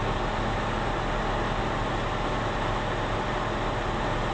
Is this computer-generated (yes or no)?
no